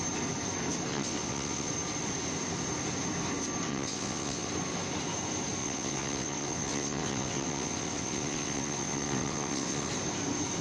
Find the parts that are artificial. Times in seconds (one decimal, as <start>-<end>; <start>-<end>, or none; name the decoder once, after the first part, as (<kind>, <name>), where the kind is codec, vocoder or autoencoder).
0.9-1.7 (vocoder, WaveNeXt); 3.7-4.5; 5.6-9.9